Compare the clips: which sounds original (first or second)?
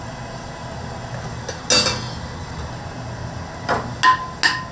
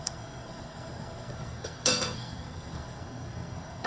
first